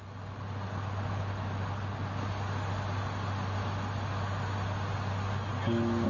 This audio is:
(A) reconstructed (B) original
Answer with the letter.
B